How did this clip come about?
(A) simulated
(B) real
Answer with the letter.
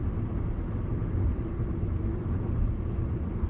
B